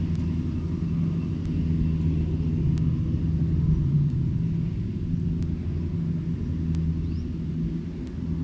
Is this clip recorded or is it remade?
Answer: recorded